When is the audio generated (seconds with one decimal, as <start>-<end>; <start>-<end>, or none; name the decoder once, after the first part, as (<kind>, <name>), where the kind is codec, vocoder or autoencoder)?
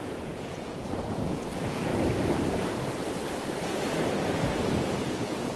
0.0-1.9 (vocoder, Vocos); 4.1-5.6